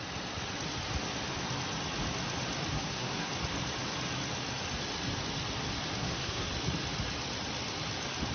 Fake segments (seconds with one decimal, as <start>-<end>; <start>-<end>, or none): 2.7-3.3; 6.0-6.5